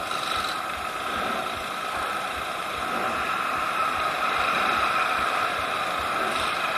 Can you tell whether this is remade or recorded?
remade